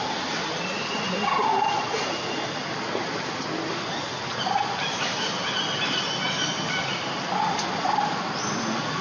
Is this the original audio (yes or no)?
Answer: yes